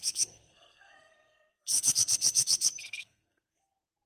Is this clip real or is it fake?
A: fake